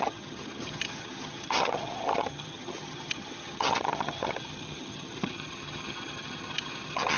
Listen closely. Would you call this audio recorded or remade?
remade